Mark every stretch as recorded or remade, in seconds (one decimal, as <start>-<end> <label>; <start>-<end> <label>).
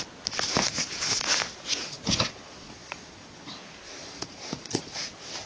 0.0-1.8 recorded; 1.8-3.5 remade; 3.5-4.0 recorded; 4.0-5.1 remade; 5.1-5.5 recorded